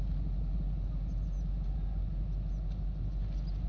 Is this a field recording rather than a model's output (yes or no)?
yes